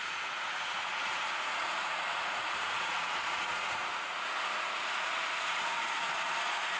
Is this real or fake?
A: fake